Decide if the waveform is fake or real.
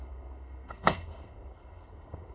fake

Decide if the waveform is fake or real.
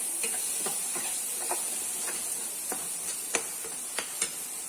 real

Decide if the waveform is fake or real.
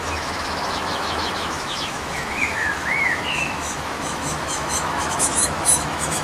fake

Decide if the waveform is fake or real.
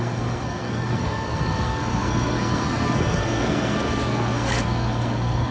fake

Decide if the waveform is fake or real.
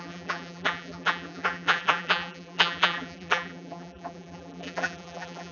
fake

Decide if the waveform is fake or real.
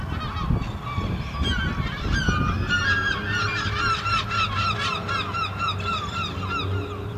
real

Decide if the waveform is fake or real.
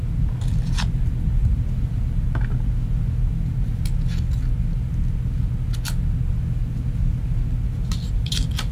real